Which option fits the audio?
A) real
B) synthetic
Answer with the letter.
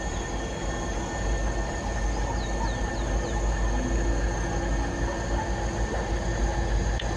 A